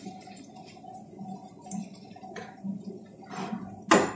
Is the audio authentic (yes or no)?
yes